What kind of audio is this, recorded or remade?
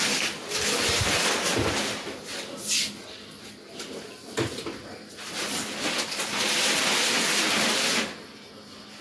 recorded